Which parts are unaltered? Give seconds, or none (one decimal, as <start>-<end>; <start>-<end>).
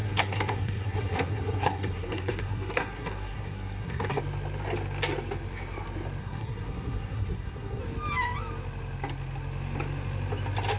4.2-6.2; 7.8-10.8